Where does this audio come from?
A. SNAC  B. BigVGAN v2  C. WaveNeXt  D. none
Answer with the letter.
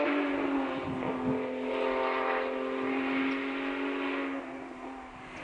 D